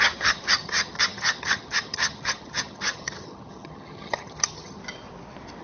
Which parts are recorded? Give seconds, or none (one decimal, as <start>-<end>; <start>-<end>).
4.8-5.6